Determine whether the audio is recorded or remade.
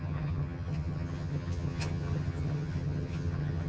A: remade